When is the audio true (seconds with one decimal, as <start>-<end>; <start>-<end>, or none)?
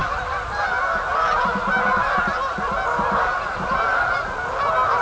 0.0-5.0